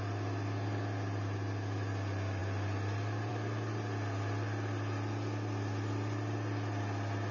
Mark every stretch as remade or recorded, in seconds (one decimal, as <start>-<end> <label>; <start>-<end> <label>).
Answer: 0.0-7.3 recorded